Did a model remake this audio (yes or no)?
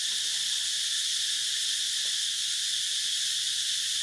no